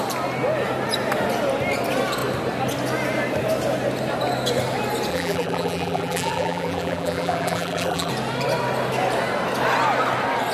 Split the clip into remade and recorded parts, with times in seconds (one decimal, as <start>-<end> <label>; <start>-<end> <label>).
0.0-5.1 recorded; 5.1-8.1 remade; 8.1-10.5 recorded

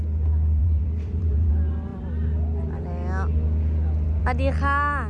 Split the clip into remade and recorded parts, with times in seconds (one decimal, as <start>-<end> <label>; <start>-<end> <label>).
0.0-0.6 recorded; 0.6-1.5 remade; 1.5-5.1 recorded

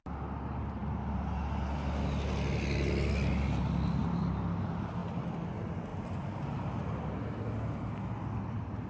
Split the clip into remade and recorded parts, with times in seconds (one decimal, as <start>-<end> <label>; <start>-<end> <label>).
0.0-8.9 recorded

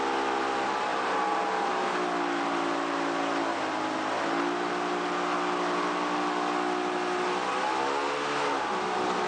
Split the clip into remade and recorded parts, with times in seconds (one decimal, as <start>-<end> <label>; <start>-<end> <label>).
0.0-0.9 recorded; 0.9-1.7 remade; 1.7-9.3 recorded

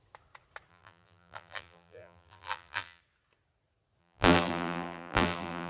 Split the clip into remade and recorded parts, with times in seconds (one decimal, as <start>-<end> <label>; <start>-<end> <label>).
0.0-0.7 recorded; 0.7-3.0 remade; 3.0-4.0 recorded; 4.0-5.7 remade

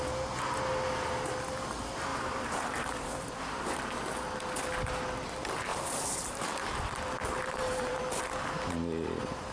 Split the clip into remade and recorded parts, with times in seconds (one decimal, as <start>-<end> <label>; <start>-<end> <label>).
0.0-2.1 recorded; 2.1-3.9 remade; 3.9-5.7 recorded; 5.7-6.4 remade; 6.4-7.4 recorded; 7.4-8.0 remade; 8.0-9.5 recorded

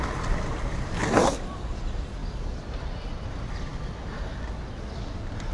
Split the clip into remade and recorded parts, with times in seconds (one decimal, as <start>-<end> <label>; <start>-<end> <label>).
0.0-1.2 recorded; 1.2-1.8 remade; 1.8-2.2 recorded; 2.2-2.9 remade; 2.9-5.5 recorded

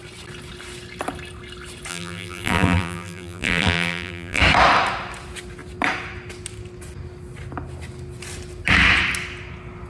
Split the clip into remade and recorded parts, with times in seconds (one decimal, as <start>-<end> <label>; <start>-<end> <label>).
0.0-1.9 recorded; 1.9-4.4 remade; 4.4-9.9 recorded